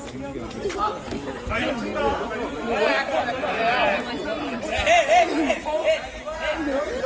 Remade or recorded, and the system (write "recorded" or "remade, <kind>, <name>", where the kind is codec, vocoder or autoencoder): recorded